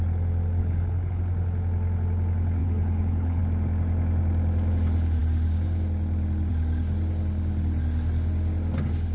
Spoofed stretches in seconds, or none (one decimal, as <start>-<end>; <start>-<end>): 0.6-1.2; 2.6-3.4